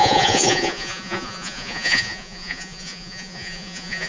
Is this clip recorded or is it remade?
remade